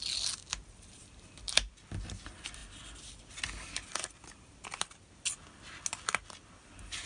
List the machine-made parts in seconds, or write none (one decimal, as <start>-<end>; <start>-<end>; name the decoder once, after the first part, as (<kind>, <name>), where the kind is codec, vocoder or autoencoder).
none